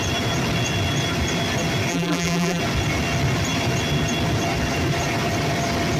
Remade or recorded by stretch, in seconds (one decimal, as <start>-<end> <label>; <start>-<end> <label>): 0.0-1.9 recorded; 1.9-2.6 remade; 2.6-6.0 recorded